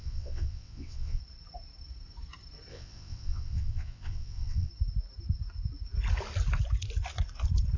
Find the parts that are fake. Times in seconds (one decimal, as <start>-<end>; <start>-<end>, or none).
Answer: 0.0-1.2; 2.7-4.7